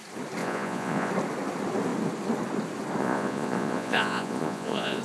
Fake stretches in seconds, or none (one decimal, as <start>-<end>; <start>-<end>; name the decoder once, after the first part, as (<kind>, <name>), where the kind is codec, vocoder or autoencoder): 0.4-1.1 (vocoder, Vocos); 3.0-5.0